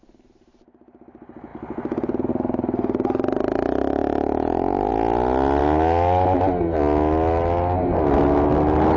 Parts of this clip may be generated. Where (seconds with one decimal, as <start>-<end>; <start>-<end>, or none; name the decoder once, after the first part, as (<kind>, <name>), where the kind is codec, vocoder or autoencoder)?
none